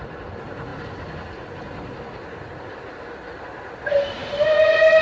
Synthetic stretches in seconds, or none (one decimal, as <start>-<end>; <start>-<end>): none